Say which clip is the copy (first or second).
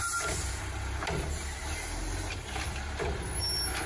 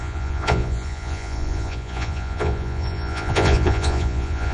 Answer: second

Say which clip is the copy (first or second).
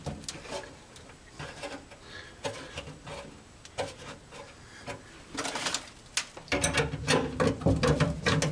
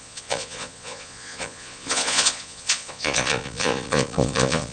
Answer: second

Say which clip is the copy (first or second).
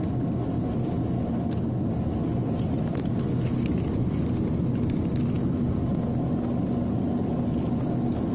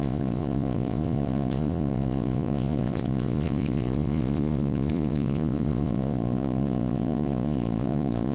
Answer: second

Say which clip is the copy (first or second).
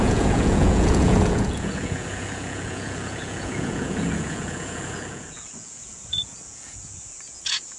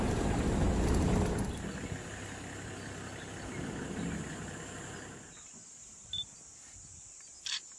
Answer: first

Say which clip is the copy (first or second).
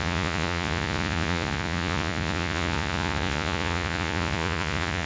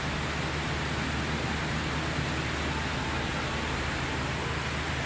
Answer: first